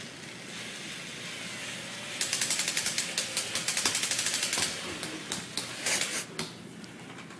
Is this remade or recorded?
recorded